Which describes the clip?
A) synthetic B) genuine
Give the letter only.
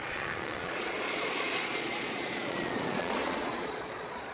A